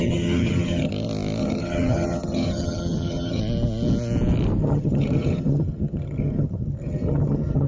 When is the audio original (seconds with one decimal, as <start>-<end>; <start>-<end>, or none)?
0.9-1.4; 3.4-4.6